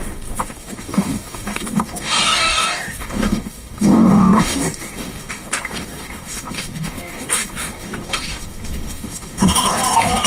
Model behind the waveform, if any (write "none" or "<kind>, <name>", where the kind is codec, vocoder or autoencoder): codec, DAC